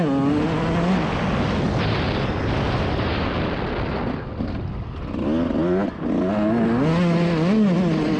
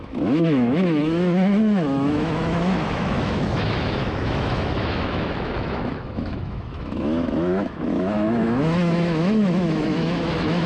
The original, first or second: first